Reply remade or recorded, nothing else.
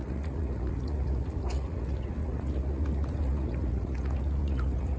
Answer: remade